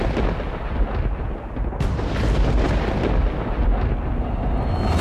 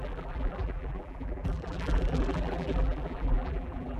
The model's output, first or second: second